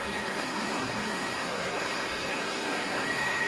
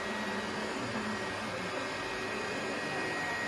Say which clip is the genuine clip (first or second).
second